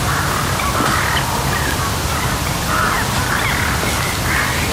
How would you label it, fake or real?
real